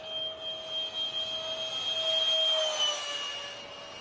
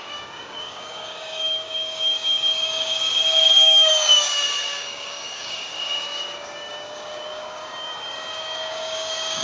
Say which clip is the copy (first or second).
second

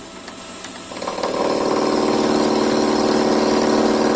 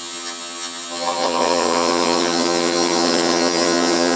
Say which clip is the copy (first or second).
second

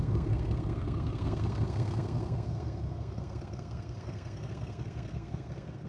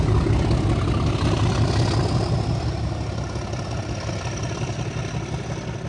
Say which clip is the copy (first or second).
first